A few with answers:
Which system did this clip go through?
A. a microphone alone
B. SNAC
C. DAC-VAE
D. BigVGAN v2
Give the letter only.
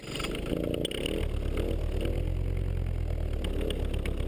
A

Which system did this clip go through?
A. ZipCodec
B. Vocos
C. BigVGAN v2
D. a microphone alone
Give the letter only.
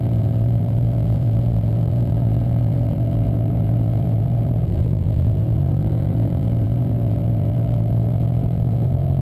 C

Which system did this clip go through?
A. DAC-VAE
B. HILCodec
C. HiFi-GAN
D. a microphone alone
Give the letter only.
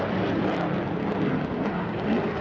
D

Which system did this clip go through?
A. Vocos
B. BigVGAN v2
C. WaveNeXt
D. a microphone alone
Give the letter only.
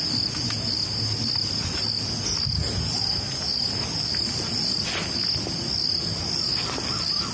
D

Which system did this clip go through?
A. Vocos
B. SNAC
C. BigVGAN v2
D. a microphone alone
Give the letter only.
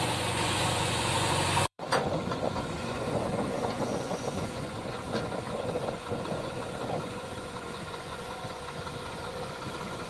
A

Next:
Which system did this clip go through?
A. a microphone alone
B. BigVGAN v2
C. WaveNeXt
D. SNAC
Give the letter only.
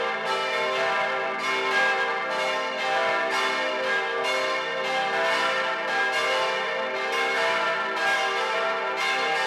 A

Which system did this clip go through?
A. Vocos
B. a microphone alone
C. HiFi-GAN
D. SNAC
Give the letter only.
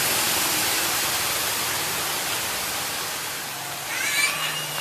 B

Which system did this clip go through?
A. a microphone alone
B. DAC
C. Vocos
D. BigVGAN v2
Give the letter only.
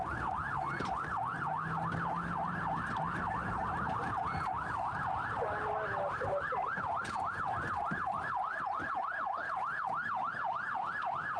A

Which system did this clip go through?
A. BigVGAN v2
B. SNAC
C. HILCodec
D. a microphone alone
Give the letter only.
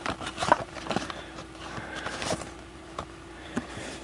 A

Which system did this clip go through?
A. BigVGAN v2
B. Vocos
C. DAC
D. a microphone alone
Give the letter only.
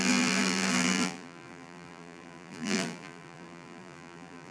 A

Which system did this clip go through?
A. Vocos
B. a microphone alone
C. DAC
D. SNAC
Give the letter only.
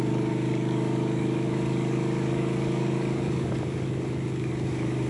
C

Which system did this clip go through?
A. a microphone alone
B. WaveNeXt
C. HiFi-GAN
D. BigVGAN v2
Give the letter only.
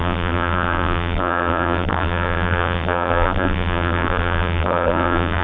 D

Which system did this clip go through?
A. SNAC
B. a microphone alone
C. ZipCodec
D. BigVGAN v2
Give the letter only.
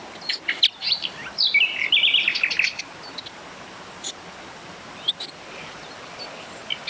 B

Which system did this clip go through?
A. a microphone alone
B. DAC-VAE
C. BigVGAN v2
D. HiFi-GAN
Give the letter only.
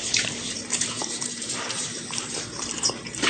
C